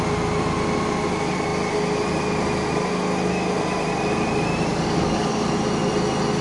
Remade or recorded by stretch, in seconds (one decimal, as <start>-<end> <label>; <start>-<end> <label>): 0.0-4.7 recorded; 4.7-5.5 remade; 5.5-6.4 recorded